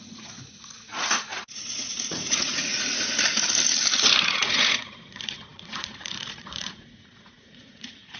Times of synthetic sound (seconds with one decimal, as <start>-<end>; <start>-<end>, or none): 0.0-2.7; 4.2-8.2